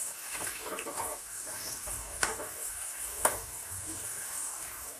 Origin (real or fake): fake